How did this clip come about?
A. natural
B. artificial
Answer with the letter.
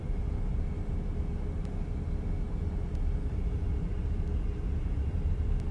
A